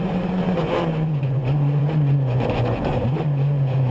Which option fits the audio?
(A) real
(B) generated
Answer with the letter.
B